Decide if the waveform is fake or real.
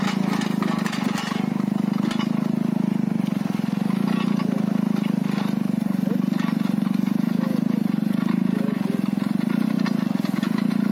real